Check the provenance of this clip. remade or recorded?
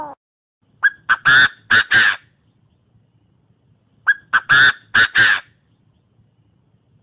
recorded